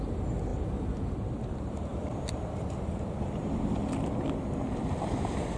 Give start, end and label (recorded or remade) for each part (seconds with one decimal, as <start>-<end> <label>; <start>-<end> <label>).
0.0-0.5 remade; 0.5-1.4 recorded; 1.4-3.8 remade; 3.8-4.8 recorded; 4.8-5.6 remade